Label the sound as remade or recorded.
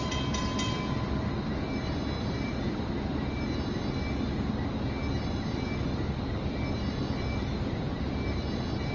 recorded